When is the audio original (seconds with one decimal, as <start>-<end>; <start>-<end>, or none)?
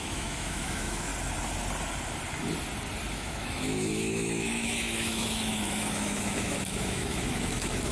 1.1-3.1